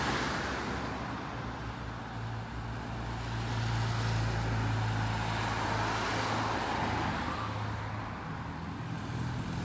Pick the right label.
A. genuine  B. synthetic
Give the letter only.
A